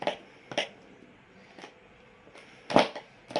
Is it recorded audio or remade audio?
recorded